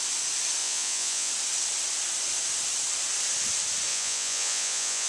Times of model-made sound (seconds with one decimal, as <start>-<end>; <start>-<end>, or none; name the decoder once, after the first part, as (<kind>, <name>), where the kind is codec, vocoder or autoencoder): 0.6-1.3 (vocoder, Vocos); 3.9-5.1